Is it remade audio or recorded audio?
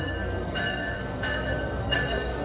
remade